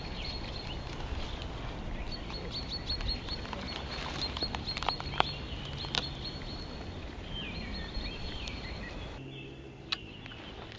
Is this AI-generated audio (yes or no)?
no